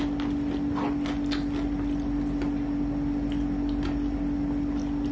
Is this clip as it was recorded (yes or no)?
yes